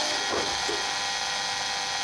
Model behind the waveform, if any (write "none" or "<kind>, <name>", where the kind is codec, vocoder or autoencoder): none